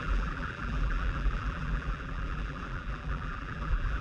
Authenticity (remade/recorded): remade